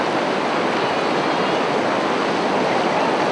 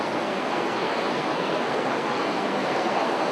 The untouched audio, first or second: first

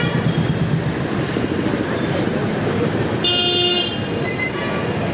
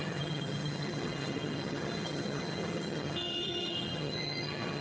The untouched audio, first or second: first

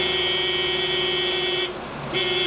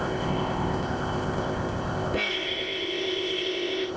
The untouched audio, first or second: first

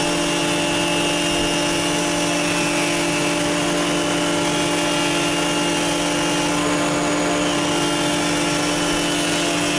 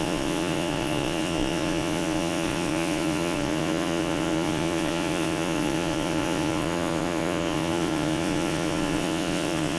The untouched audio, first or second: first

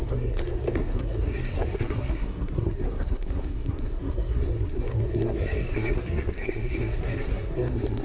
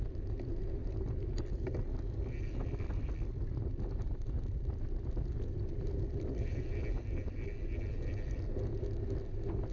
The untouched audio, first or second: second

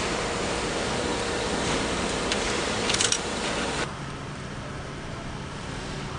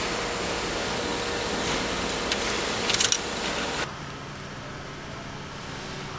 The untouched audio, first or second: second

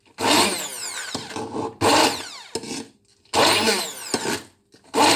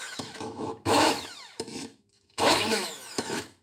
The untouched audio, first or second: first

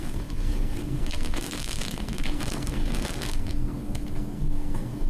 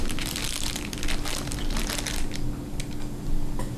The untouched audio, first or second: second